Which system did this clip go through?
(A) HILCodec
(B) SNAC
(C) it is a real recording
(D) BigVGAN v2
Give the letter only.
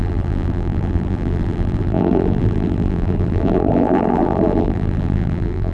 D